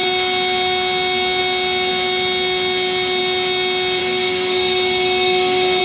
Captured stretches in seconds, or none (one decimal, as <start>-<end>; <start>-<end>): 0.0-4.0